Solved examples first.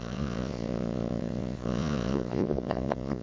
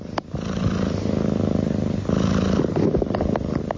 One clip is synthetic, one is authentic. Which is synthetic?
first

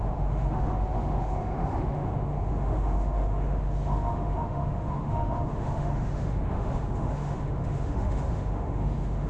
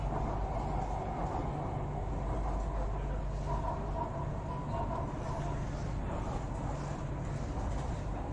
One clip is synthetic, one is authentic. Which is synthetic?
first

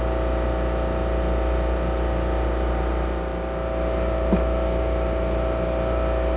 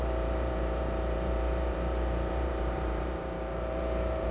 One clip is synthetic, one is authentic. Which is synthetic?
second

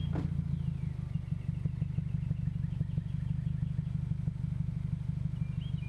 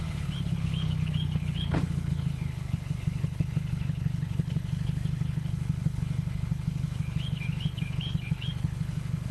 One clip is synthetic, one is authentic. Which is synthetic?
second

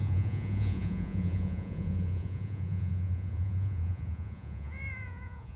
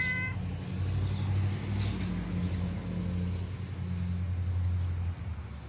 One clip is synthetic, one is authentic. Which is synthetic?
first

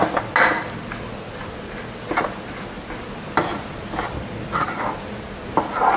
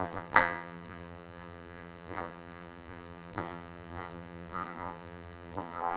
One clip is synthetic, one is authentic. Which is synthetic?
second